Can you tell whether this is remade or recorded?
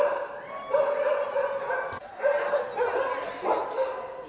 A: recorded